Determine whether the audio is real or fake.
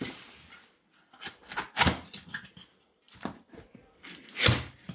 real